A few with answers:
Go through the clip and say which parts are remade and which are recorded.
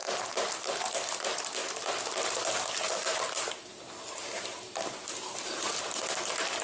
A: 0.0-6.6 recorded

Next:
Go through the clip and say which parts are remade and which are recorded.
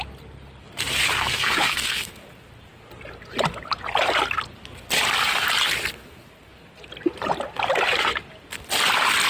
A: 0.0-1.1 recorded; 1.1-2.1 remade; 2.1-9.3 recorded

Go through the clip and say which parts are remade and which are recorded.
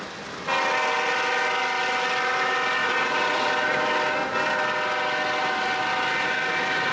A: 0.0-2.8 recorded; 2.8-3.5 remade; 3.5-6.9 recorded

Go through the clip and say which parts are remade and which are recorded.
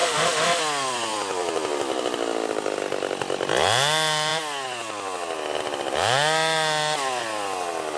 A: 0.0-0.6 remade; 0.6-8.0 recorded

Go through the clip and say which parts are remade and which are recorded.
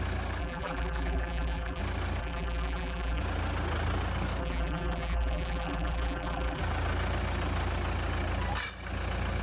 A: 0.0-0.4 recorded; 0.4-1.8 remade; 1.8-2.2 recorded; 2.2-3.2 remade; 3.2-4.4 recorded; 4.4-6.6 remade; 6.6-9.4 recorded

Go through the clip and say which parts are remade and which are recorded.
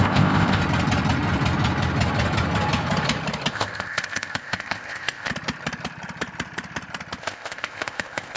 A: 0.0-0.6 remade; 0.6-3.5 recorded; 3.5-5.3 remade; 5.3-7.2 recorded; 7.2-8.4 remade